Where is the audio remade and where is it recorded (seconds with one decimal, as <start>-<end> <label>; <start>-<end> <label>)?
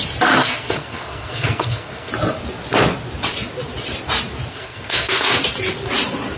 0.0-0.4 recorded; 0.4-2.1 remade; 2.1-4.5 recorded; 4.5-5.4 remade; 5.4-6.4 recorded